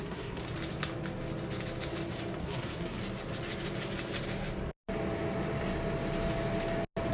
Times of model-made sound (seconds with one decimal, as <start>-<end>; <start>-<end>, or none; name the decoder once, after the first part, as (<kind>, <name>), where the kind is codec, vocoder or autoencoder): 0.0-0.4 (codec, SNAC); 2.4-3.0